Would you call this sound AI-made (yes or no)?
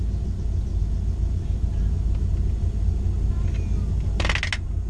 no